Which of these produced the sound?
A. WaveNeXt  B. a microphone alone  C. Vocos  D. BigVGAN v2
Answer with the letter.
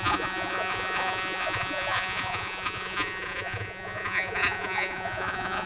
C